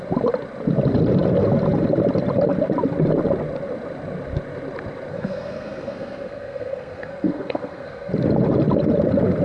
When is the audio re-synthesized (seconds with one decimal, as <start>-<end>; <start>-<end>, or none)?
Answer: 5.1-8.1

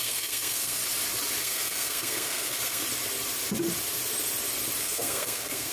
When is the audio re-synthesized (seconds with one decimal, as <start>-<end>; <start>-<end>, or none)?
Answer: 0.0-0.8; 1.4-2.8; 4.8-5.7